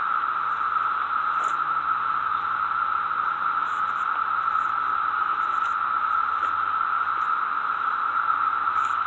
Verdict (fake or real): real